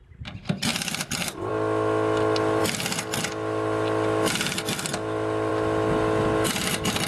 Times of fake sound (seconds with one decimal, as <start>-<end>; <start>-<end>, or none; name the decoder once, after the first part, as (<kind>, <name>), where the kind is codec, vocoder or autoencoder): 2.6-3.2 (vocoder, BigVGAN v2)